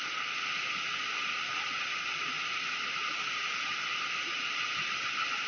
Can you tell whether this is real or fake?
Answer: real